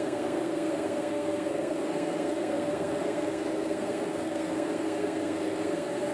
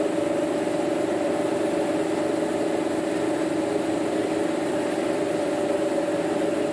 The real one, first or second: second